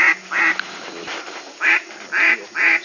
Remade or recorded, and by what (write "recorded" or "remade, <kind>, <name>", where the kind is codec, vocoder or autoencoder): recorded